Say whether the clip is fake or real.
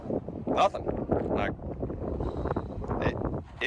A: fake